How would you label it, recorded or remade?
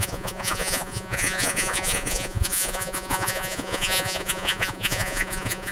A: remade